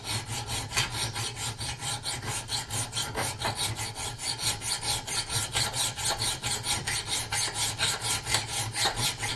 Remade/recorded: recorded